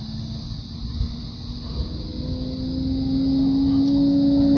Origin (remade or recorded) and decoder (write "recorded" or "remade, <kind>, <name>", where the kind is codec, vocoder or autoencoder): recorded